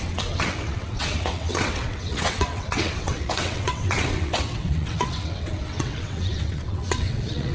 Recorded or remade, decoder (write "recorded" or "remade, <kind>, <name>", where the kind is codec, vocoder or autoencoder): remade, vocoder, WaveNeXt